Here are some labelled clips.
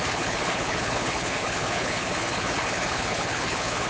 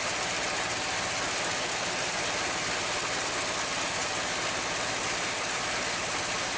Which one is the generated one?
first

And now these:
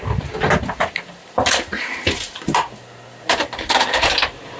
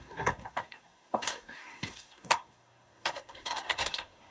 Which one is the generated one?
second